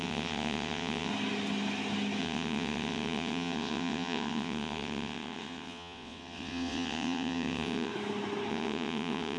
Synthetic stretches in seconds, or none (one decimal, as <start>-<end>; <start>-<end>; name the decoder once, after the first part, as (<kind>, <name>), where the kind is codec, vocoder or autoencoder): 0.0-1.1 (vocoder, WaveNeXt); 2.2-7.9; 8.5-9.4

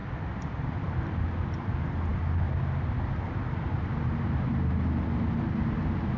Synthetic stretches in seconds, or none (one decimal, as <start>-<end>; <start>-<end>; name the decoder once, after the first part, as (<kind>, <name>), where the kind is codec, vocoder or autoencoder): 0.0-1.2 (vocoder, BigVGAN v2)

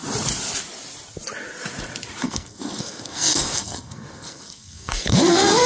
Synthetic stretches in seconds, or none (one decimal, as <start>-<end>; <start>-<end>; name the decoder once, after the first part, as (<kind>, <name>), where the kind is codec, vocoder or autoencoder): 2.2-5.7 (codec, SNAC)

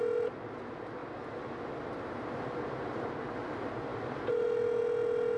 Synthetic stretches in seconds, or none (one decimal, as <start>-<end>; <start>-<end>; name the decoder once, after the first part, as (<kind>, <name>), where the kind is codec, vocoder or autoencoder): none

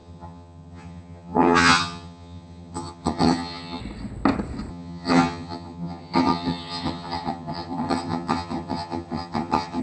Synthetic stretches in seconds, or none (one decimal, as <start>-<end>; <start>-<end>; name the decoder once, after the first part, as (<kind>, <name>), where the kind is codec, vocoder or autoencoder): 0.0-3.8 (vocoder, HiFi-GAN); 4.7-9.8

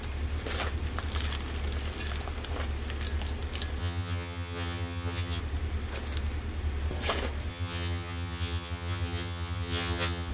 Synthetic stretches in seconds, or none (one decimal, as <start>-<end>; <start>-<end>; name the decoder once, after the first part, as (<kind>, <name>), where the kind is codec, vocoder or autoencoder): 3.8-5.4 (vocoder, HiFi-GAN); 7.5-10.3